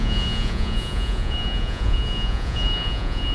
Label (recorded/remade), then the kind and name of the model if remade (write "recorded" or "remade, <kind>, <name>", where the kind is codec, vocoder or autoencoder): remade, vocoder, Vocos